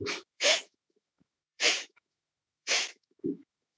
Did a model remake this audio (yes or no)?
yes